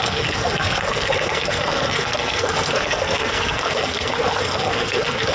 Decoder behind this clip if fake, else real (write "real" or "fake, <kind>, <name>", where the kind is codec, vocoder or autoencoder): fake, codec, SNAC